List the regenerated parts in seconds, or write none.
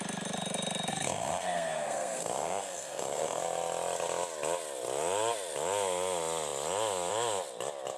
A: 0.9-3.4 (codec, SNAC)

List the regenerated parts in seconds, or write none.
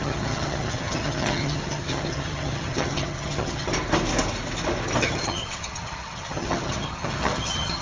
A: 0.0-3.7 (vocoder, HiFi-GAN); 5.0-7.8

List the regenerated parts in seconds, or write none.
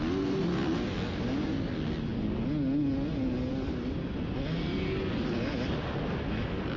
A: none